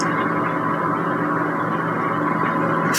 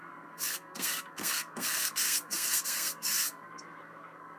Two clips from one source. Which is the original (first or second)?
first